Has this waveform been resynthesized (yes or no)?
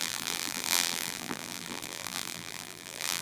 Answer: yes